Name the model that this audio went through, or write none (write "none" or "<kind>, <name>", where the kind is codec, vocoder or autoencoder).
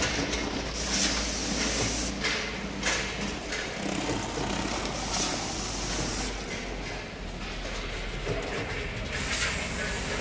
none